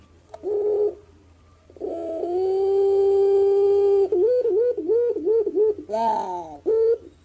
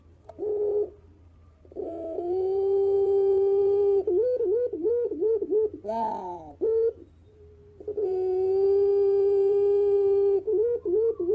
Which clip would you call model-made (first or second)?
second